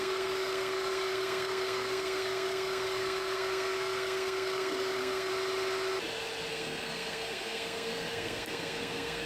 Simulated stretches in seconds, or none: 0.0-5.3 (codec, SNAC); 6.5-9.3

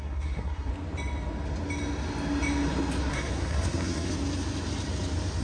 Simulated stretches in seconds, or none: 0.0-0.7 (codec, SNAC); 3.0-4.1

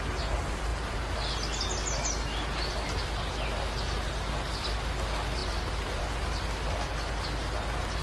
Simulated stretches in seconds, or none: none

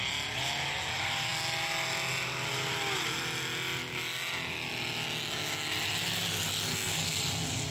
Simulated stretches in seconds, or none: 6.7-7.2 (codec, SNAC)

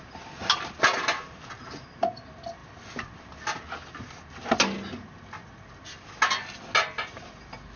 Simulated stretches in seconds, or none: none

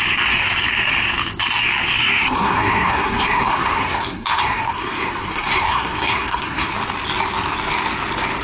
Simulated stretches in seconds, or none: 2.0-6.7 (codec, SNAC)

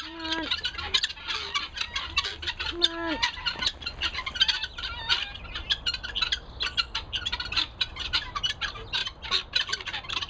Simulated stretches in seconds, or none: none

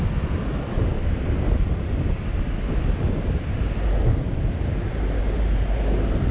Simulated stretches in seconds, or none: none